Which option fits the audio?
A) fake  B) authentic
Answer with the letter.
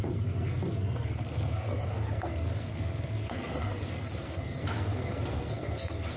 A